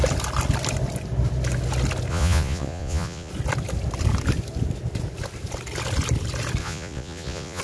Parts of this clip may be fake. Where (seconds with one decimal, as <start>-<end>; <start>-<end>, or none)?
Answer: 2.1-3.3; 6.6-7.6